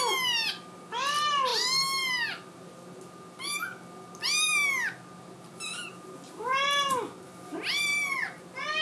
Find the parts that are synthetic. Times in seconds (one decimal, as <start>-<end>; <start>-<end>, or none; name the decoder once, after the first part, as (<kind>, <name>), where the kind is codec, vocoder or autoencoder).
none